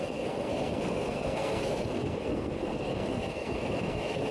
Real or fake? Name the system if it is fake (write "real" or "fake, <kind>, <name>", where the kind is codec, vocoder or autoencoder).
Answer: fake, codec, SNAC